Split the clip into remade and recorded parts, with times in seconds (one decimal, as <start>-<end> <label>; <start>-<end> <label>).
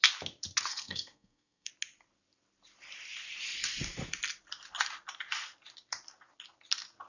0.0-0.7 recorded; 0.7-1.7 remade; 1.7-7.1 recorded